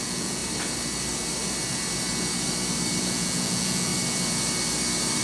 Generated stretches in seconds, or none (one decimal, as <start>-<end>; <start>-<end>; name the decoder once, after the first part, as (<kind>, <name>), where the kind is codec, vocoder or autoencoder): 0.0-0.4 (vocoder, Vocos); 3.0-3.9